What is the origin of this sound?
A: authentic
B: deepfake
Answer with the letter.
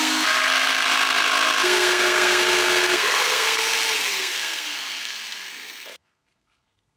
B